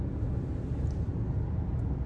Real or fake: real